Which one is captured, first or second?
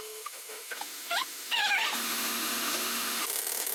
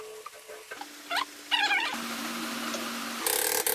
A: second